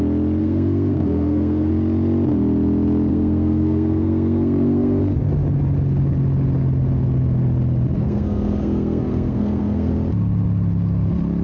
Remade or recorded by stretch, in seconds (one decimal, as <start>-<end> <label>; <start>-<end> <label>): 0.0-0.4 recorded; 0.4-1.7 remade; 1.7-3.1 recorded; 3.1-5.0 remade; 5.0-8.0 recorded; 8.0-9.9 remade; 9.9-11.4 recorded